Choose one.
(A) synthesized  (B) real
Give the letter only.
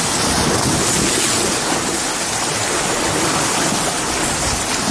B